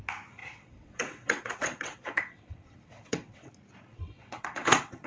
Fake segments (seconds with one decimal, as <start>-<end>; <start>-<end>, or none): 0.4-3.5; 3.9-5.1